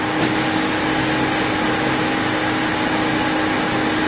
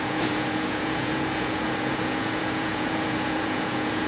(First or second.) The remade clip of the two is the second